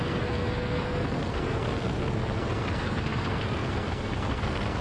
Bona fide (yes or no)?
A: no